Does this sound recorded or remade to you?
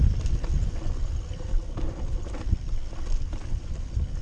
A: recorded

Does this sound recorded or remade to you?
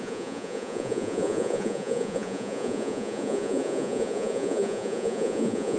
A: remade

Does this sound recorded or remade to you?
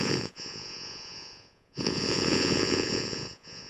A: remade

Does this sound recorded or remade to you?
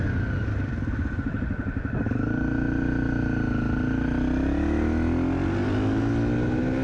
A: recorded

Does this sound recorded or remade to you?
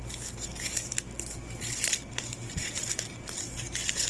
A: recorded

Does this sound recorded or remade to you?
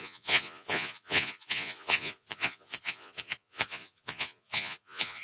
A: remade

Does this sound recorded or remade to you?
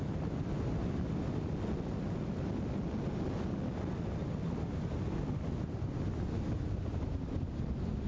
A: recorded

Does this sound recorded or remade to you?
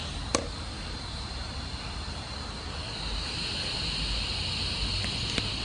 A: recorded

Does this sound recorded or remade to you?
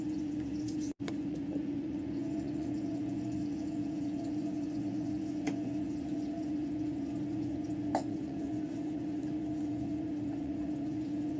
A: remade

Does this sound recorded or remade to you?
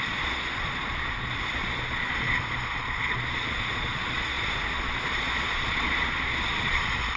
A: remade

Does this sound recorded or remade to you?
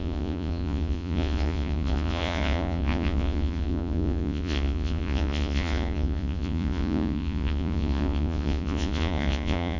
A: remade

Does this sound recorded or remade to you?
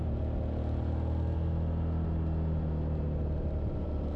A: recorded